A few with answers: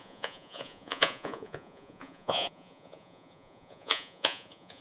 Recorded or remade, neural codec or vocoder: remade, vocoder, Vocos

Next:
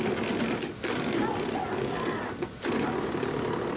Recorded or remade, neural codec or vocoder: recorded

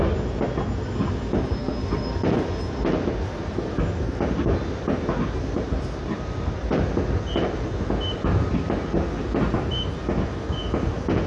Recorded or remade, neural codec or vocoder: recorded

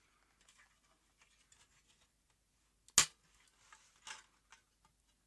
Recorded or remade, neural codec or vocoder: recorded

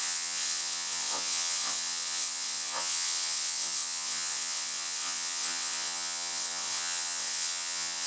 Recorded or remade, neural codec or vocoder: remade, vocoder, WaveNeXt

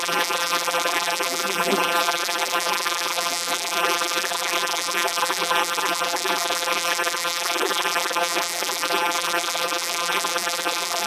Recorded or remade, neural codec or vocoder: remade, vocoder, BigVGAN v2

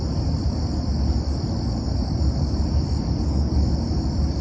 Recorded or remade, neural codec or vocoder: recorded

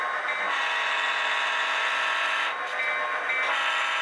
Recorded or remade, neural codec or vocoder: recorded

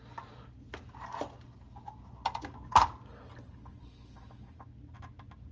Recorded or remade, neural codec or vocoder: recorded